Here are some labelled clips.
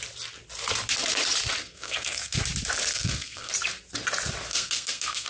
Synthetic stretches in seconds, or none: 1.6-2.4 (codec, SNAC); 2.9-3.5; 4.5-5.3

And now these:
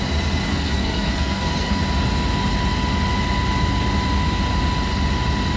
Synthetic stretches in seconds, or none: 0.5-1.8 (codec, SNAC)

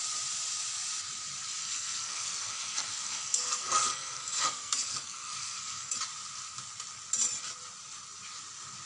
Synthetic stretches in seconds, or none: 1.6-5.9 (codec, SNAC)

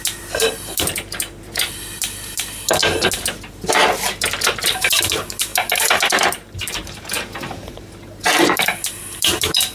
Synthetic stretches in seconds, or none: 0.0-2.8 (vocoder, BigVGAN v2); 4.4-9.7